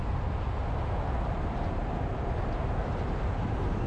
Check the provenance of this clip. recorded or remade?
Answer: recorded